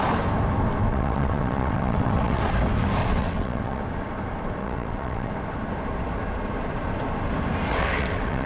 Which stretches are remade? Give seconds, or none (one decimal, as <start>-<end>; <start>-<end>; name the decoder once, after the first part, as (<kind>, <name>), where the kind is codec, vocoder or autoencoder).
0.9-2.4 (vocoder, WaveNeXt); 3.0-3.8; 4.6-5.3; 7.7-8.5